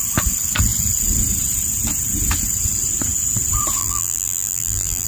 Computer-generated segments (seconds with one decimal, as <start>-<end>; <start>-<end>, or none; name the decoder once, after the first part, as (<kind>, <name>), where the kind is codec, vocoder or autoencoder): 3.8-5.1 (vocoder, BigVGAN v2)